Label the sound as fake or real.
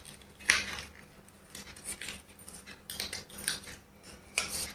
real